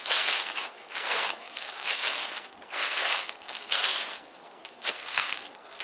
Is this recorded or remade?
remade